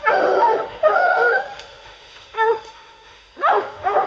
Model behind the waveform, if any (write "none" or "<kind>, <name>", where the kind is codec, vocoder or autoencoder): autoencoder, DAC-VAE